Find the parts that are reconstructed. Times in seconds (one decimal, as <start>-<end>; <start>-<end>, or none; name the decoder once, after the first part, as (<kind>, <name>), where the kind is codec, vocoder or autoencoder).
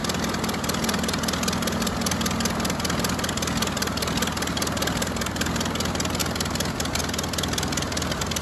none